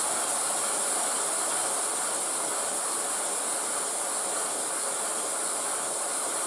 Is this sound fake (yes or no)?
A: no